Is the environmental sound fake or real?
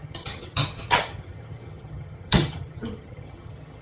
fake